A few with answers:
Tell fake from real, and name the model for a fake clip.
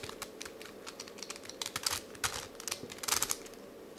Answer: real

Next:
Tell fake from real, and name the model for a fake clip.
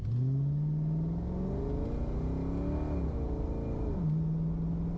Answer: real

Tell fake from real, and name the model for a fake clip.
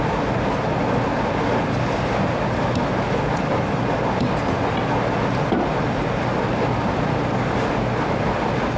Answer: real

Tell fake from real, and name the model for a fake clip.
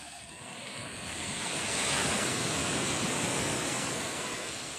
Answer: fake, codec, SNAC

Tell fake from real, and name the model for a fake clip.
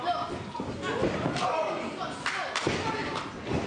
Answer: real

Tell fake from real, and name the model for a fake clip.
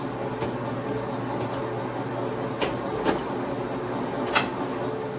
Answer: real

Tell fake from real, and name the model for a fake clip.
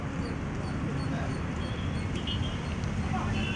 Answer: real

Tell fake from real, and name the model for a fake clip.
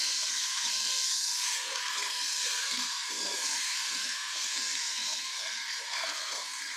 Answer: fake, codec, SNAC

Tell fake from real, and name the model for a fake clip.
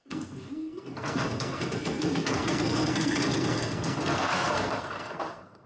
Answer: fake, codec, SNAC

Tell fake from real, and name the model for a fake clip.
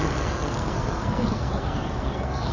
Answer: fake, codec, SNAC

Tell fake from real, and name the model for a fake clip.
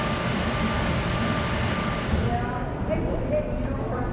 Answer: real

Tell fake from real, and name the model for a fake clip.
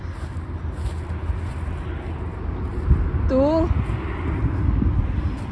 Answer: real